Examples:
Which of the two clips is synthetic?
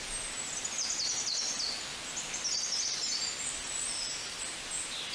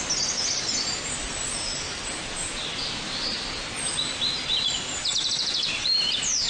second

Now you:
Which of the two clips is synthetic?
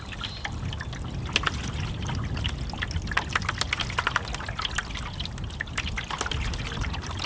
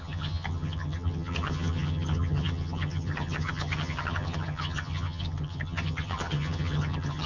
second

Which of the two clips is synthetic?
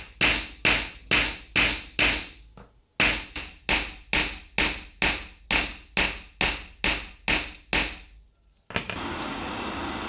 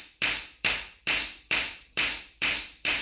second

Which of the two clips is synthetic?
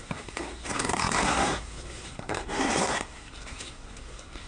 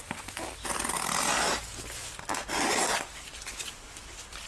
first